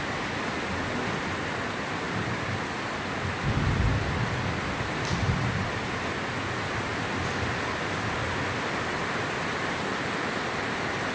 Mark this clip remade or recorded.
recorded